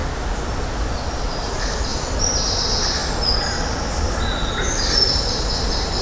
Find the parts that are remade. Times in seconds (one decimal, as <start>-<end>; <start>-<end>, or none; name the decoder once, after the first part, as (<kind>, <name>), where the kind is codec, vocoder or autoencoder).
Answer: none